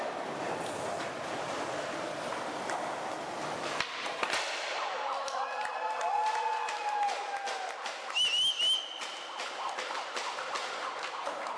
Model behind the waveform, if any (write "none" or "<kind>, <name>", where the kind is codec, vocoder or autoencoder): none